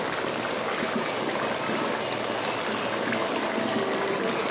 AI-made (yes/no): no